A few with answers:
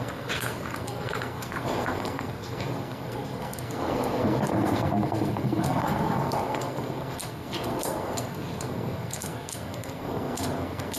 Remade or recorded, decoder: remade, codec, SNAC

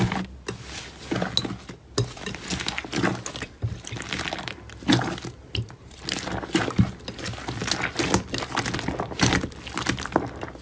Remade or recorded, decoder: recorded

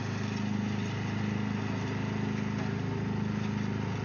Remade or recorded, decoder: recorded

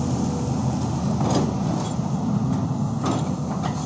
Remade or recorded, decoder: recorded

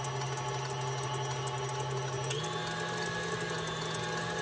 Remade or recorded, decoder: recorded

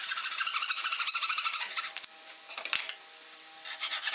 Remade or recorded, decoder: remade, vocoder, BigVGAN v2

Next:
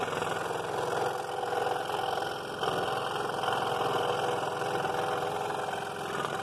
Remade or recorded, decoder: recorded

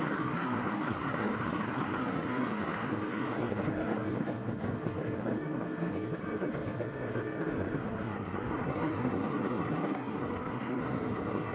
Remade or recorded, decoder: remade, codec, SNAC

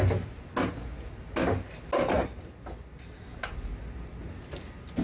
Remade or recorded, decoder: recorded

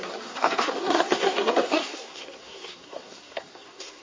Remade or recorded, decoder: remade, codec, SNAC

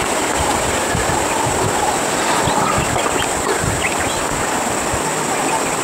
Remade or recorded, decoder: recorded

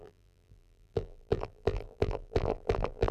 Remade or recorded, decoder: remade, vocoder, BigVGAN v2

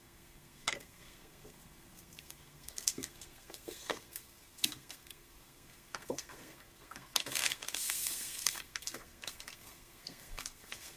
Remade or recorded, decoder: remade, codec, SNAC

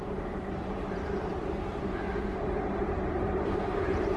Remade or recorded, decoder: remade, vocoder, BigVGAN v2